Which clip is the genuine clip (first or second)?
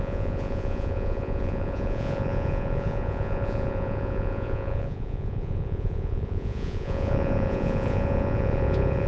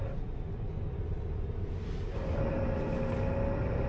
second